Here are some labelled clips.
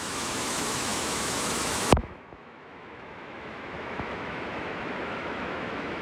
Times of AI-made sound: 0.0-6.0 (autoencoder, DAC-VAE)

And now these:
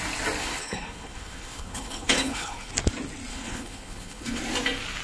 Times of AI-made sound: 0.4-2.7 (codec, HILCodec); 3.3-4.4

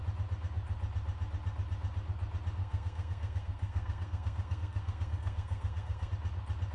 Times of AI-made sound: 2.6-6.1 (codec, SNAC)

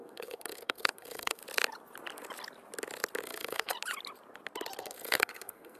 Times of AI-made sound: 0.0-1.4 (codec, SNAC); 3.2-3.7; 4.8-5.8